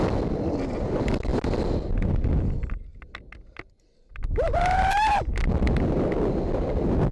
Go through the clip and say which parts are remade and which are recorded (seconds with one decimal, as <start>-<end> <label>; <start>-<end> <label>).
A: 0.0-7.1 recorded